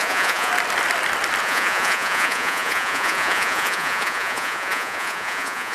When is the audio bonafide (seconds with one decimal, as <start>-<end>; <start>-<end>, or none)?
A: 0.5-1.4